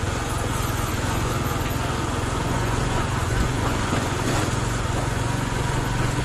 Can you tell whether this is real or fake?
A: fake